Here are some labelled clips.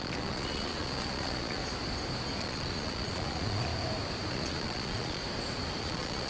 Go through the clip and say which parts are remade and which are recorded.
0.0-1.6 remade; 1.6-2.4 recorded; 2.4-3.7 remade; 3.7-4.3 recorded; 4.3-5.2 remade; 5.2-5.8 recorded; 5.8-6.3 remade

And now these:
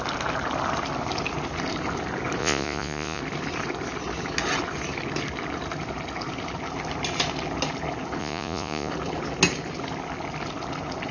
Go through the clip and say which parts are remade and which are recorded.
0.0-2.4 recorded; 2.4-3.2 remade; 3.2-8.2 recorded; 8.2-8.9 remade; 8.9-11.1 recorded

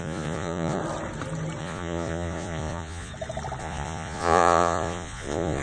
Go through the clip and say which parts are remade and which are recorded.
0.0-0.8 remade; 0.8-1.6 recorded; 1.6-3.1 remade; 3.1-3.6 recorded; 3.6-5.6 remade

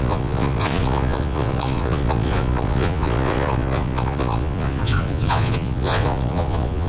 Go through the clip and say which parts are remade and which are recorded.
0.0-6.9 remade

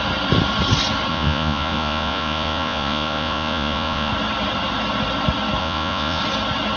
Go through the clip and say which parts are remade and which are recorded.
0.0-1.1 recorded; 1.1-4.1 remade; 4.1-5.6 recorded; 5.6-6.2 remade; 6.2-6.8 recorded

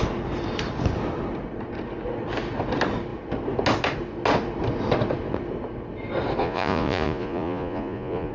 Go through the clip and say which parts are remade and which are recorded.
0.0-6.4 recorded; 6.4-8.3 remade

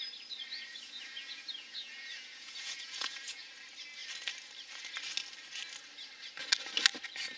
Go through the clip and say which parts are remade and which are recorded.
0.0-0.7 recorded; 0.7-3.5 remade; 3.5-7.4 recorded